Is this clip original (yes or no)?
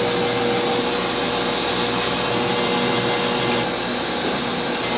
yes